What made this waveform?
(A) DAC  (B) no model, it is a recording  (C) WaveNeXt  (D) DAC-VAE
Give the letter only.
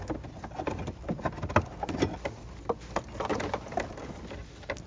B